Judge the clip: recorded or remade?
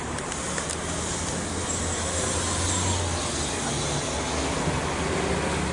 recorded